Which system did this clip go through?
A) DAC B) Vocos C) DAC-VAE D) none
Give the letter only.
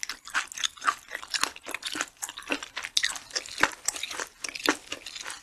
D